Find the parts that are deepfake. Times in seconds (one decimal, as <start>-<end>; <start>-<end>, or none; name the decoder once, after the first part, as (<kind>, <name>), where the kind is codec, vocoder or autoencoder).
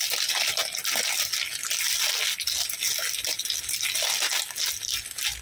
none